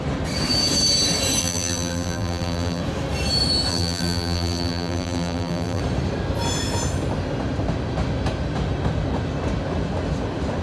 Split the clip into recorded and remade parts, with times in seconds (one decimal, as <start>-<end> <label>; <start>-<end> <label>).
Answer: 0.0-1.4 recorded; 1.4-2.8 remade; 2.8-3.7 recorded; 3.7-5.8 remade; 5.8-10.6 recorded